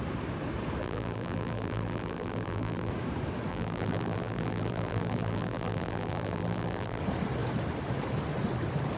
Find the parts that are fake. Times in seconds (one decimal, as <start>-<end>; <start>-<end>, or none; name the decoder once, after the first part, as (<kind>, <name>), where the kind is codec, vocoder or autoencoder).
0.8-2.9 (vocoder, BigVGAN v2); 3.5-7.0